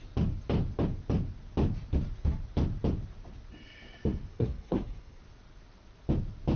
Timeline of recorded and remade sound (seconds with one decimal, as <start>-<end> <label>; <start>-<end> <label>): 0.0-4.3 recorded; 4.3-5.2 remade; 5.2-6.6 recorded